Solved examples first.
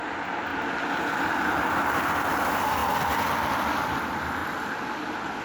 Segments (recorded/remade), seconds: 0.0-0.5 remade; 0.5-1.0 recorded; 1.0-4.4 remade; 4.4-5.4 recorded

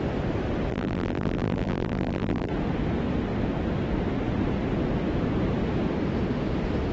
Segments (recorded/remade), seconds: 0.0-0.7 recorded; 0.7-2.5 remade; 2.5-6.9 recorded

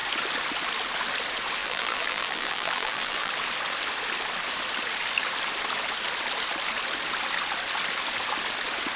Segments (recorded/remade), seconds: 0.0-1.6 recorded; 1.6-3.3 remade; 3.3-9.0 recorded

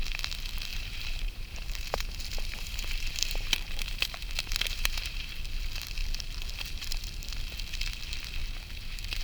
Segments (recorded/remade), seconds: 0.0-0.7 recorded; 0.7-5.3 remade; 5.3-8.4 recorded; 8.4-9.2 remade